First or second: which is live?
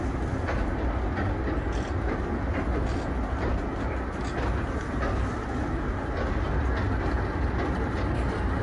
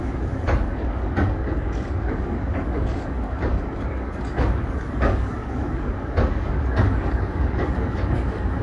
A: first